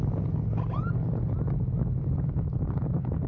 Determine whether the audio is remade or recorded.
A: recorded